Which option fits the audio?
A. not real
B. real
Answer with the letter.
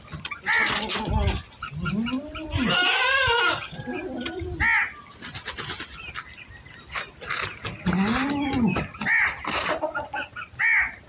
B